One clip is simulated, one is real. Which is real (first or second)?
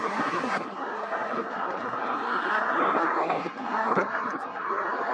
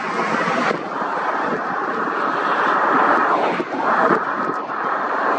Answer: second